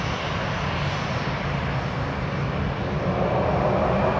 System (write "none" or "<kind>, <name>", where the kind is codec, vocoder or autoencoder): none